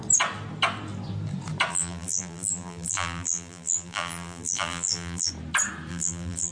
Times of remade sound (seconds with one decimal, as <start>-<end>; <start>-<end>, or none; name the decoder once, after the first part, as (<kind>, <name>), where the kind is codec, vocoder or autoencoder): 1.7-5.3 (vocoder, BigVGAN v2); 5.9-6.5